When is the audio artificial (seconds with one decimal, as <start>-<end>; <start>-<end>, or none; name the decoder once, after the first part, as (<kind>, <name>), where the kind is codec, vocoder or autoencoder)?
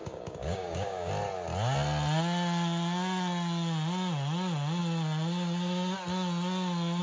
0.0-1.1 (codec, DAC)